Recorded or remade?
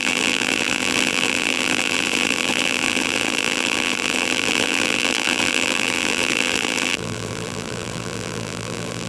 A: remade